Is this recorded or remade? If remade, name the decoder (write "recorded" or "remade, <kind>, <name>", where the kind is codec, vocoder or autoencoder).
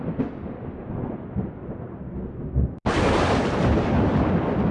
recorded